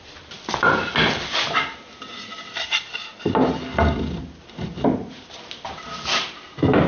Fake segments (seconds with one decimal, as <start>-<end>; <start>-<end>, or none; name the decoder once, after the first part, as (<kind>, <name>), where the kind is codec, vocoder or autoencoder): none